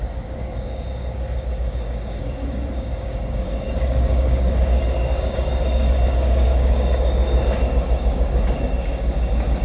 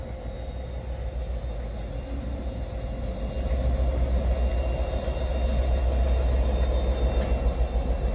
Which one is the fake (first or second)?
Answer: first